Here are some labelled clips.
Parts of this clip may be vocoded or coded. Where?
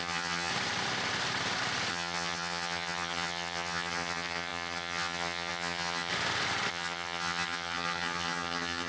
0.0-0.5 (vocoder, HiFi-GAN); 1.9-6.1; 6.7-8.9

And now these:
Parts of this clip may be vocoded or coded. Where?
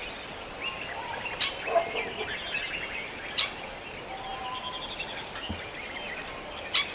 none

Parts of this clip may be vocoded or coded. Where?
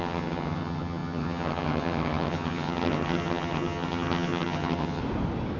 0.0-5.0 (vocoder, HiFi-GAN)